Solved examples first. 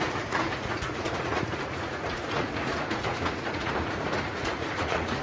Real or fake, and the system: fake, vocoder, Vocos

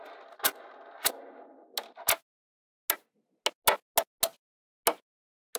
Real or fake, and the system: real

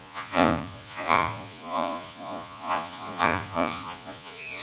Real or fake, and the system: fake, vocoder, Vocos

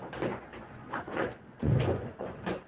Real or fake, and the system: fake, vocoder, Vocos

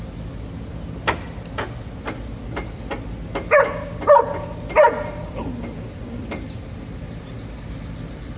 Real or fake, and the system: real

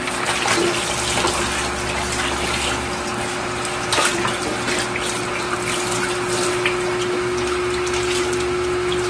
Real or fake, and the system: real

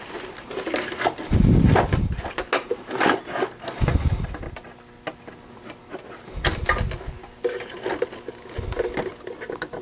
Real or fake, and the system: real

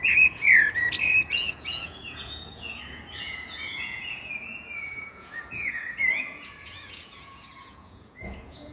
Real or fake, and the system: fake, vocoder, Vocos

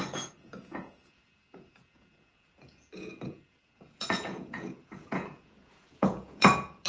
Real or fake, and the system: fake, vocoder, Vocos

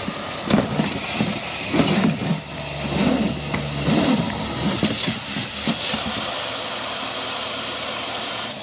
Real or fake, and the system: real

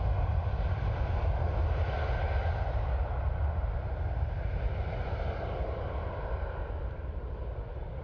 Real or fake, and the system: real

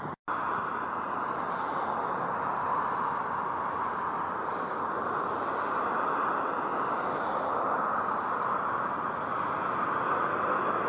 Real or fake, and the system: real